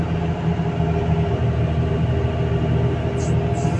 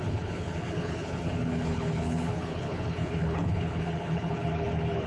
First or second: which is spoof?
second